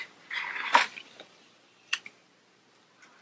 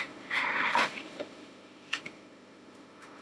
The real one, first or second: first